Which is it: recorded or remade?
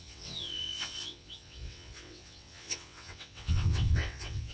remade